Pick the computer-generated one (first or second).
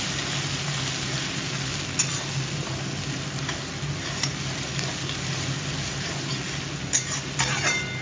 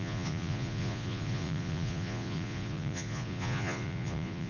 second